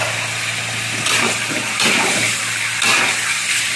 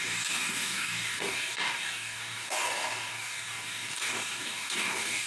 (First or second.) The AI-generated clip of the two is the second